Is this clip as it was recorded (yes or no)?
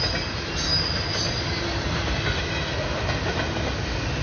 yes